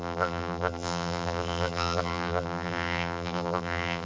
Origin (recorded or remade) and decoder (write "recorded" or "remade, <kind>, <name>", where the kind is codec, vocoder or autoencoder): remade, vocoder, BigVGAN v2